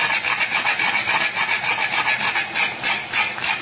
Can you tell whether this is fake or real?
real